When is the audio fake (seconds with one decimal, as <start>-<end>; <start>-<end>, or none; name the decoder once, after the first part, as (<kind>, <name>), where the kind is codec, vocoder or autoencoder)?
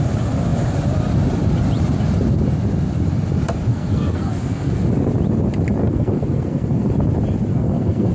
3.7-4.9 (codec, SNAC); 5.8-6.9; 7.5-8.1